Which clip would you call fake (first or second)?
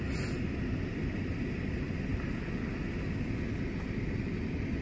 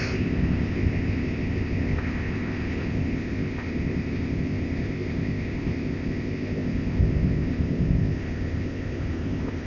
second